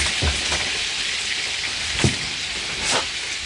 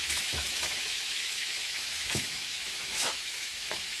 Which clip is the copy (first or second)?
second